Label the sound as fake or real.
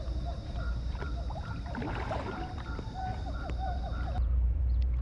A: fake